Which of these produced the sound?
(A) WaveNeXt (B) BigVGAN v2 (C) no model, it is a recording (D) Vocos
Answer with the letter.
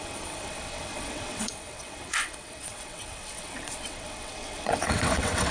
A